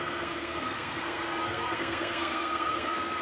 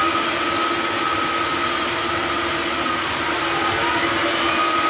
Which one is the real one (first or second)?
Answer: second